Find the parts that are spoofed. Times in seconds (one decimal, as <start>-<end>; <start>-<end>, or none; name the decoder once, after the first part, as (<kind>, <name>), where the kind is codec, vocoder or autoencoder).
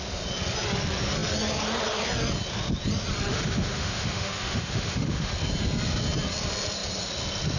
3.3-5.3 (autoencoder, DAC-VAE)